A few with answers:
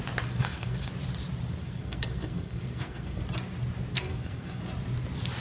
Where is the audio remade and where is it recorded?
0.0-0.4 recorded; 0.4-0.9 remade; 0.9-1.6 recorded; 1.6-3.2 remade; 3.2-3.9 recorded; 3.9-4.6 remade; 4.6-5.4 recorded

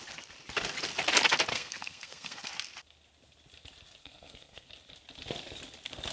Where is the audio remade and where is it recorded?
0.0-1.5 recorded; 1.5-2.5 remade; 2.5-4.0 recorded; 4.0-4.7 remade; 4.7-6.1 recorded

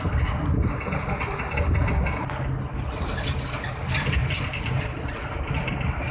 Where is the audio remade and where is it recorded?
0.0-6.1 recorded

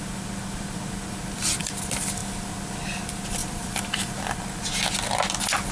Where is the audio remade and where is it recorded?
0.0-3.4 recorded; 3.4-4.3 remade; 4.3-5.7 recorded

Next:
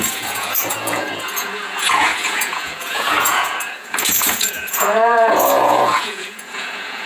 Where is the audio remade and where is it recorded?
0.0-7.1 remade

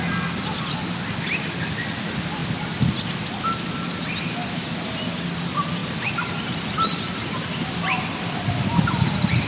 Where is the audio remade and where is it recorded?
0.0-5.8 recorded; 5.8-8.8 remade; 8.8-9.5 recorded

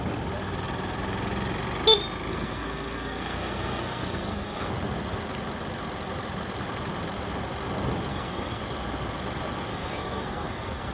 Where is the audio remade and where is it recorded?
0.0-2.3 recorded; 2.3-4.7 remade; 4.7-8.1 recorded; 8.1-8.6 remade; 8.6-9.7 recorded; 9.7-10.9 remade